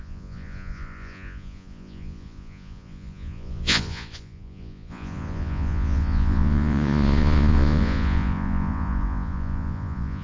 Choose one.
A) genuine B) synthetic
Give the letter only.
B